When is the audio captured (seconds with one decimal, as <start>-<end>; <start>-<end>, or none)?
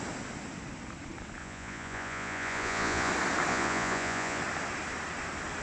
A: 0.0-1.4; 3.1-3.5; 4.4-5.6